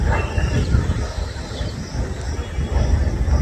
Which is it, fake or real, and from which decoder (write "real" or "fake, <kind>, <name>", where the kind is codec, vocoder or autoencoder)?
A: real